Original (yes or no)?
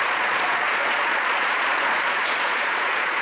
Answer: no